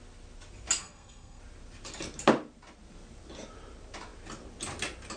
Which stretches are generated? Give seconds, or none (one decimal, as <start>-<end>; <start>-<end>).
0.8-1.4